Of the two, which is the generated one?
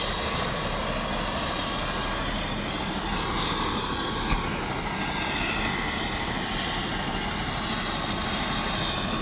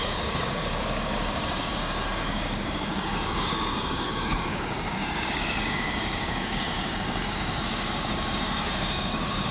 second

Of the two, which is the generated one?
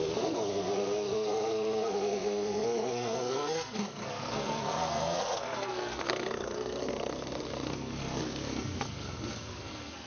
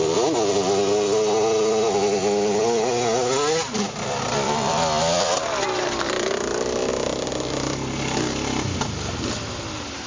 first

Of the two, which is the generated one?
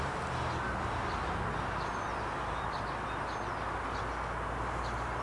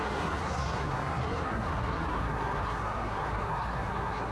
second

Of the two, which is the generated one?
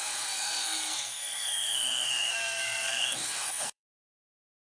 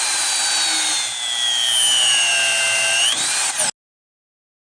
first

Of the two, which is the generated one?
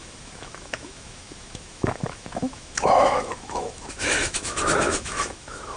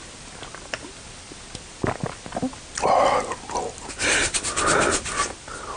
first